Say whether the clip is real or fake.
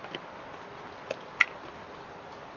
real